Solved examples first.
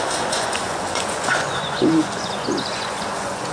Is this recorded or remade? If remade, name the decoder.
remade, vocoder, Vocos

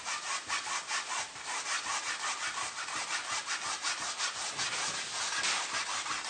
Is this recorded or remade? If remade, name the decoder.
recorded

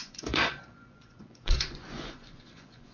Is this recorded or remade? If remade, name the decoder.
remade, vocoder, Vocos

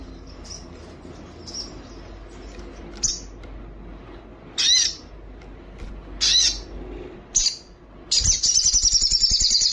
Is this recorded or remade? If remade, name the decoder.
recorded